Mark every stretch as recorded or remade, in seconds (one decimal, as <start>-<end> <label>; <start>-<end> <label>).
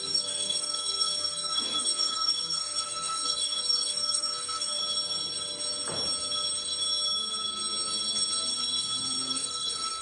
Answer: 0.0-4.8 remade; 4.8-9.3 recorded; 9.3-10.0 remade